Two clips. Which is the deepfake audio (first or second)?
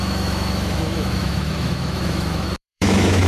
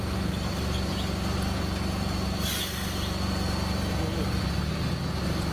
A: first